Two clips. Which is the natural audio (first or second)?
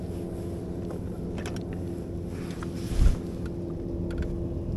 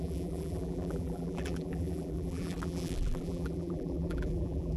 first